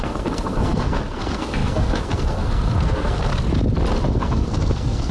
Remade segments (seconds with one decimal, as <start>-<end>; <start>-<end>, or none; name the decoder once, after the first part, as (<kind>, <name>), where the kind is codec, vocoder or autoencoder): 0.0-3.3 (codec, SNAC); 4.1-5.1